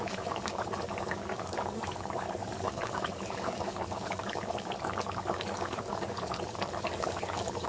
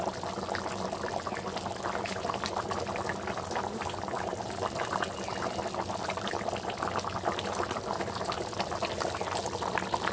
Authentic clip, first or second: second